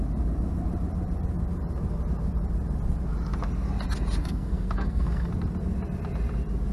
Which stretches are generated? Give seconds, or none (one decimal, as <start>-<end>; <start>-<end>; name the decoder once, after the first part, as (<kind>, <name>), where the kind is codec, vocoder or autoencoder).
4.2-5.3 (codec, SNAC)